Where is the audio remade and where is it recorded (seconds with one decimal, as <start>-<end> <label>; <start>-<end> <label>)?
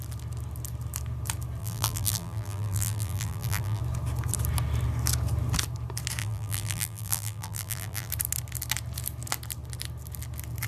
0.0-1.6 recorded; 1.6-3.8 remade; 3.8-6.2 recorded; 6.2-8.1 remade; 8.1-10.7 recorded